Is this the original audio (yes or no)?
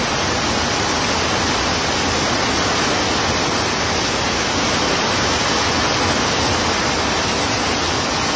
yes